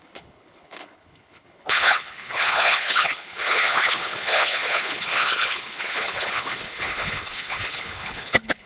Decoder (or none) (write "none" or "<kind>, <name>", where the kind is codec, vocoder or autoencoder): codec, HILCodec